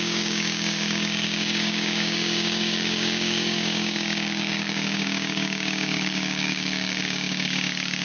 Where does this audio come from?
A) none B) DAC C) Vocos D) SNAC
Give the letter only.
B